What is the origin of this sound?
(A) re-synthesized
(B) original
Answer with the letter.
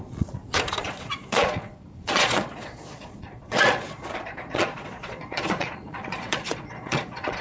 A